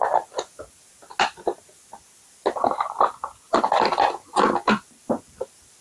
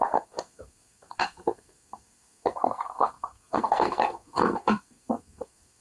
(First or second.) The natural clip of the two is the first